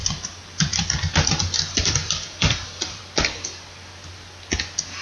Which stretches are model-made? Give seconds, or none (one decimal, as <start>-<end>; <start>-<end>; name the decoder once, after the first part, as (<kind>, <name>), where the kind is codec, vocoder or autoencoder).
0.0-3.0 (vocoder, BigVGAN v2)